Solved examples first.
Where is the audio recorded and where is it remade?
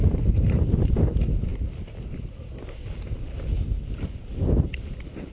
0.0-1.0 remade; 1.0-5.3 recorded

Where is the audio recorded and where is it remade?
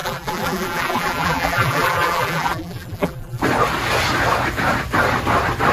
0.0-3.4 remade; 3.4-5.7 recorded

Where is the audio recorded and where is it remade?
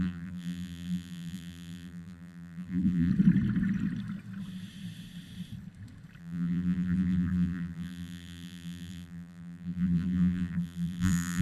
0.0-3.1 remade; 3.1-6.2 recorded; 6.2-11.4 remade